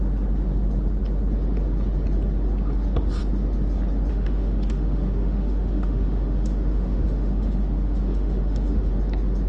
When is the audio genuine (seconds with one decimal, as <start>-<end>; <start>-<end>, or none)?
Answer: 0.0-4.1; 8.9-9.5